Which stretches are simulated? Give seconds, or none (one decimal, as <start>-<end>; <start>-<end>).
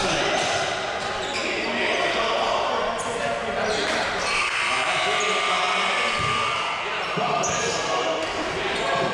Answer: none